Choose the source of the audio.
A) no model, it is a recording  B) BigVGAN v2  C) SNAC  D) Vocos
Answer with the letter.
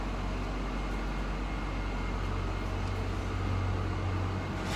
A